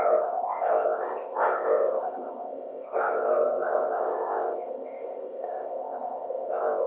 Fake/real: fake